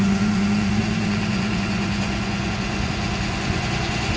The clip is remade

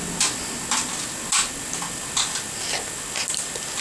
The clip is recorded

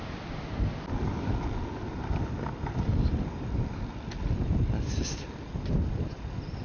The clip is recorded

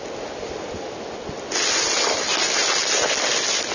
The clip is recorded